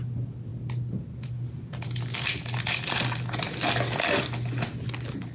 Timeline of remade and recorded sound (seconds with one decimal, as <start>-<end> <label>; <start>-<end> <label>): 0.0-5.3 recorded